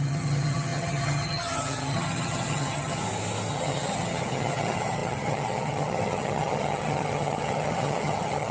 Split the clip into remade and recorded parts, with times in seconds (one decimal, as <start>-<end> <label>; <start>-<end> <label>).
0.0-3.0 remade; 3.0-3.5 recorded; 3.5-8.5 remade